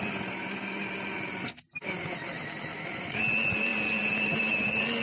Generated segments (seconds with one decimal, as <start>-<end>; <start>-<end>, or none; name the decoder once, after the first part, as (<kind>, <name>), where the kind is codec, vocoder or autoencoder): none